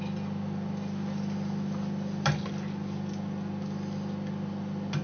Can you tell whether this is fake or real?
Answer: real